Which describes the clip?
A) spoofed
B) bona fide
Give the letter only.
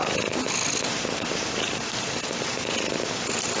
B